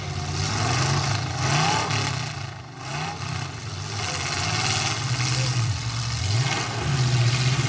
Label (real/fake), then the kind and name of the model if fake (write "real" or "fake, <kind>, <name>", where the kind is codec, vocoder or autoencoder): real